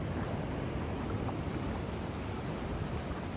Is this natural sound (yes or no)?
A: yes